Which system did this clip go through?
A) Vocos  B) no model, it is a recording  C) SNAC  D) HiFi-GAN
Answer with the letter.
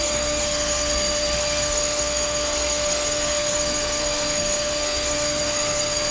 C